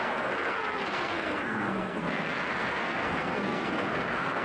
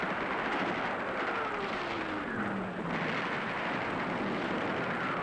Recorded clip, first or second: second